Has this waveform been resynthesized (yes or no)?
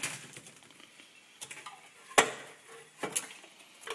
no